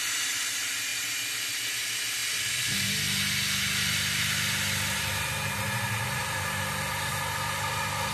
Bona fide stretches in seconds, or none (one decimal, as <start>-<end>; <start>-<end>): 0.0-8.1